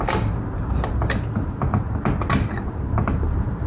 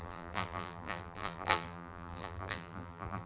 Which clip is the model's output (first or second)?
second